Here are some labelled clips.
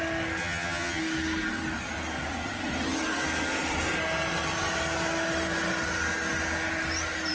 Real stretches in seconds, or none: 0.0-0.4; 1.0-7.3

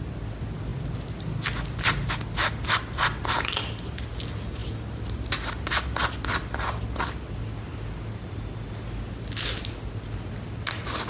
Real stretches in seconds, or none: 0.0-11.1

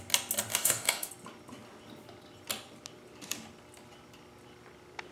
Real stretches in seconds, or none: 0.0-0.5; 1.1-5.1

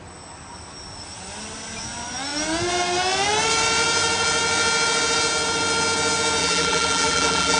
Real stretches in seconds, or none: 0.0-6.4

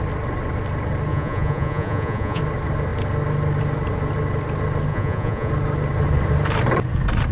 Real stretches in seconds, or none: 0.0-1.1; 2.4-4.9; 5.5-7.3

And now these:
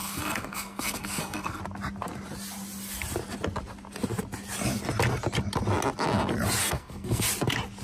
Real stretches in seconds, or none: 1.6-6.6; 7.2-7.8

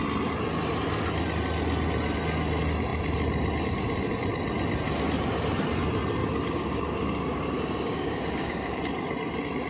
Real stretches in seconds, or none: 0.0-6.2; 8.8-9.7